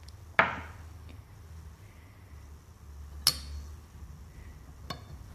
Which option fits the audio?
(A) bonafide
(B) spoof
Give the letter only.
A